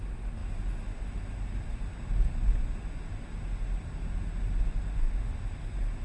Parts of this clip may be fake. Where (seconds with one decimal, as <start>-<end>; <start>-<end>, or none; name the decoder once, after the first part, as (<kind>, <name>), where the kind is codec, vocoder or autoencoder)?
4.7-5.6 (autoencoder, DAC-VAE)